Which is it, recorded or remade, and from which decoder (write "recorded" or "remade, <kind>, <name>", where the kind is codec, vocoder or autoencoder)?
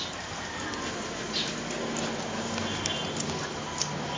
recorded